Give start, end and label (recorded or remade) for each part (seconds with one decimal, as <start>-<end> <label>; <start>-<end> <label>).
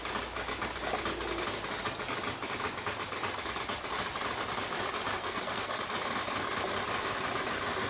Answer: 0.0-5.1 recorded; 5.1-5.8 remade; 5.8-7.9 recorded